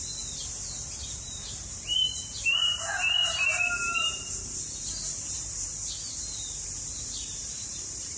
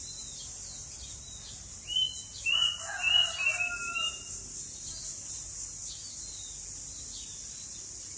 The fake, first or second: first